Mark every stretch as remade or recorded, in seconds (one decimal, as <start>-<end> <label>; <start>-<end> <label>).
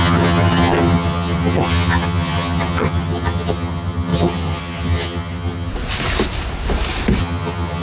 0.0-5.7 remade; 5.7-7.2 recorded; 7.2-7.8 remade